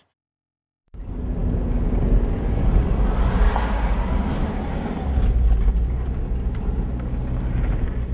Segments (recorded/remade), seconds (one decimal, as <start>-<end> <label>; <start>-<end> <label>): 0.0-8.1 recorded